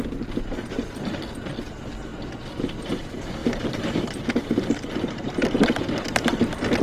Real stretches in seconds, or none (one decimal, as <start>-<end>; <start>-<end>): 0.0-3.4; 5.1-6.8